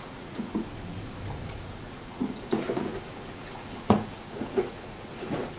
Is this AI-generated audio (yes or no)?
yes